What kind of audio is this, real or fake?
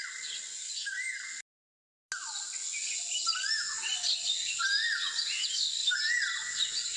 real